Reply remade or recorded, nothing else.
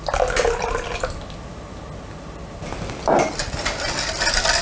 recorded